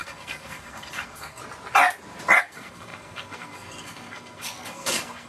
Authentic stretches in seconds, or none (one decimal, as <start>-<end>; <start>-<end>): 1.4-2.4